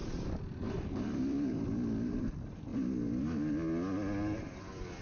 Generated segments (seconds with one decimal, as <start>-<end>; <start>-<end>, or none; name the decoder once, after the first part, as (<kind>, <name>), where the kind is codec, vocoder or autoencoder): 0.0-2.2 (vocoder, BigVGAN v2)